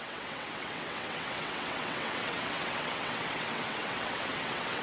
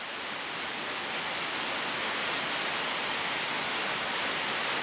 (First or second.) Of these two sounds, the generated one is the first